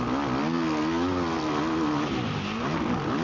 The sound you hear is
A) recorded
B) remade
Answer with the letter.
A